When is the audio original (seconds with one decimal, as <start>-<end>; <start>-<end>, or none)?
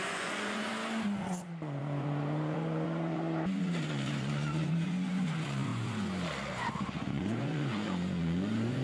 0.7-1.2